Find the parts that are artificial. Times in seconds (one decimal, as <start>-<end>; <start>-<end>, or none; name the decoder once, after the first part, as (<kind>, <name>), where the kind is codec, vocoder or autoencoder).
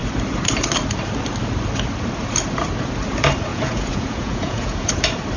3.5-4.9 (vocoder, Vocos)